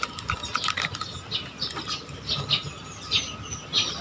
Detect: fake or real real